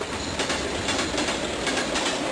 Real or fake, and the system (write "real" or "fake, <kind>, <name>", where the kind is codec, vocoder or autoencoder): real